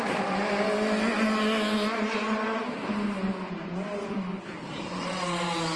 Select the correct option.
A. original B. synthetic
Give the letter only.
A